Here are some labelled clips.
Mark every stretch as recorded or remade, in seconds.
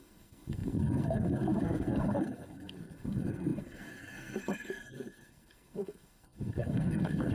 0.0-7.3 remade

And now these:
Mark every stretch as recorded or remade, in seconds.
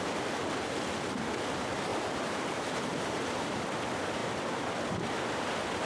0.0-1.9 recorded; 1.9-3.6 remade; 3.6-5.9 recorded